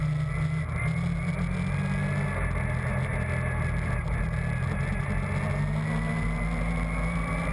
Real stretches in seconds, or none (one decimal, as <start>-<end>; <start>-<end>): 0.0-7.5